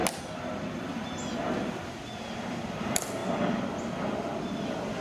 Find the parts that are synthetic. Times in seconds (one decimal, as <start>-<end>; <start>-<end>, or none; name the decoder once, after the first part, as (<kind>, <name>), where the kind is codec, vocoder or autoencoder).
0.7-2.0 (vocoder, BigVGAN v2); 2.5-3.2; 4.6-5.0